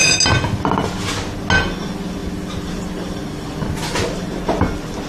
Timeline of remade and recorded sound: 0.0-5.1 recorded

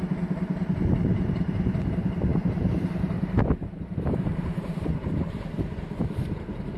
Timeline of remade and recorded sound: 0.0-1.1 recorded; 1.1-1.9 remade; 1.9-2.3 recorded; 2.3-5.7 remade; 5.7-6.8 recorded

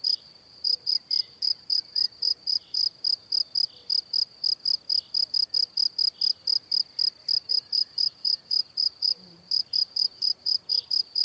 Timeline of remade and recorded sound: 0.0-2.8 remade; 2.8-7.5 recorded; 7.5-11.2 remade

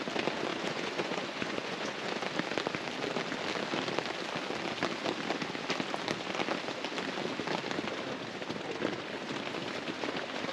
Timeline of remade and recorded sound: 0.0-0.5 recorded; 0.5-2.1 remade; 2.1-10.5 recorded

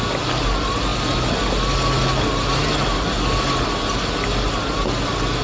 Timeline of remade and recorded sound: 0.0-5.4 recorded